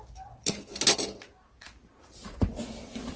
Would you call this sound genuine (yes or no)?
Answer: yes